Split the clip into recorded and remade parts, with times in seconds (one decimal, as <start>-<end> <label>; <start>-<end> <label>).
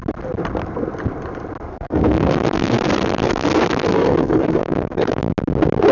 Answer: 0.0-1.7 recorded; 1.7-5.2 remade; 5.2-5.9 recorded